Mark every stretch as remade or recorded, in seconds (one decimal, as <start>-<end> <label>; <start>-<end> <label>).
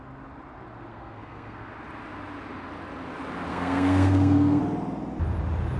0.0-0.9 recorded; 0.9-1.7 remade; 1.7-3.5 recorded; 3.5-4.6 remade; 4.6-5.8 recorded